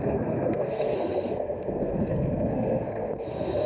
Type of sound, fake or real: fake